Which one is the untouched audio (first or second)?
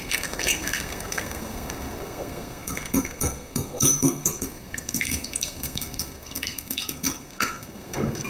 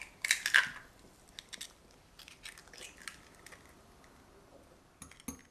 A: second